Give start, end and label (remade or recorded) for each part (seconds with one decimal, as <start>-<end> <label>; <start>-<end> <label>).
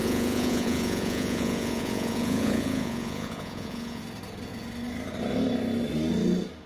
0.0-4.0 remade; 4.0-6.7 recorded